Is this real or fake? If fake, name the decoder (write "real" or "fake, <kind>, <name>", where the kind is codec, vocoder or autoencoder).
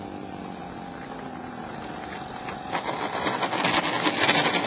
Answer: real